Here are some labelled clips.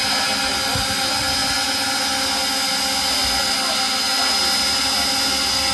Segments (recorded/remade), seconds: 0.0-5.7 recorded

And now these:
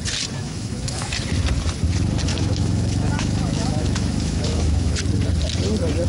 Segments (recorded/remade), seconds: 0.0-0.4 recorded; 0.4-1.1 remade; 1.1-2.3 recorded; 2.3-4.9 remade; 4.9-6.1 recorded